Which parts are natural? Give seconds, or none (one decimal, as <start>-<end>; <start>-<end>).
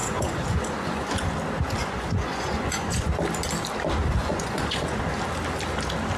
1.1-1.8; 3.1-4.2; 5.0-6.2